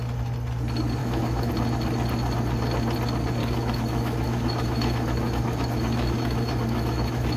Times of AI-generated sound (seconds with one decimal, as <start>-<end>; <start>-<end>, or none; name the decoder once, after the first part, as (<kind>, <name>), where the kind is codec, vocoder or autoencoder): 1.0-1.5 (autoencoder, DAC-VAE); 3.4-7.4